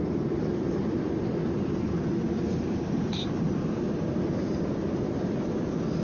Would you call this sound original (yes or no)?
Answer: yes